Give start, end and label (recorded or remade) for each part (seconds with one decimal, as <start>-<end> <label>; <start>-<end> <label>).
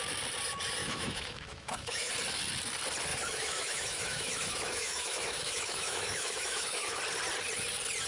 0.0-0.8 recorded; 0.8-2.1 remade; 2.1-3.1 recorded; 3.1-7.0 remade; 7.0-8.1 recorded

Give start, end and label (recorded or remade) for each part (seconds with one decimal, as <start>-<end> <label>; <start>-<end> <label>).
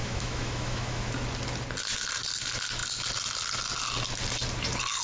0.0-1.1 remade; 1.1-5.0 recorded